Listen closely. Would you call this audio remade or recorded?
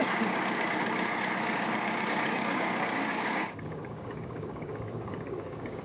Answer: remade